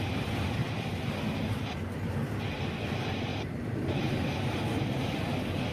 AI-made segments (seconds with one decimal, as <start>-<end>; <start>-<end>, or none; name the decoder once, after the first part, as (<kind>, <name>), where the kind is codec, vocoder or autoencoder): none